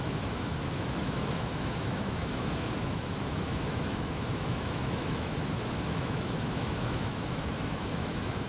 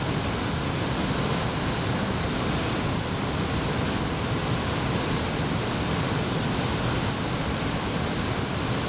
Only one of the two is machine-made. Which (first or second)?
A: first